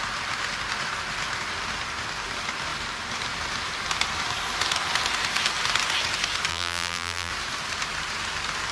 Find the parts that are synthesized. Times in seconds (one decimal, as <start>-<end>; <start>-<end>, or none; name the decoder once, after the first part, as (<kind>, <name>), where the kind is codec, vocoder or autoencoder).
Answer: 6.5-7.3 (vocoder, BigVGAN v2)